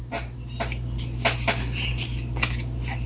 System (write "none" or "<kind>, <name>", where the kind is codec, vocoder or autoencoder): none